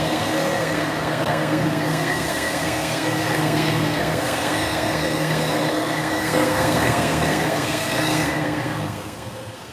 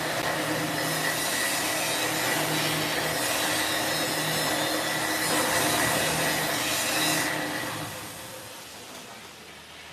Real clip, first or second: second